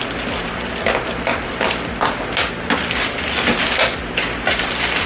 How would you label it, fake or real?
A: real